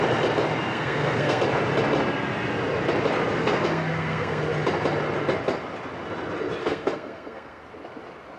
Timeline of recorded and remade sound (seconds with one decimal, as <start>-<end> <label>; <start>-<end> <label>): 0.0-0.7 recorded; 0.7-1.4 remade; 1.4-3.4 recorded; 3.4-4.4 remade; 4.4-6.6 recorded; 6.6-7.6 remade; 7.6-8.4 recorded